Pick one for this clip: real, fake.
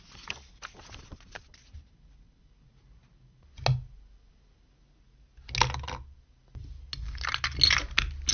real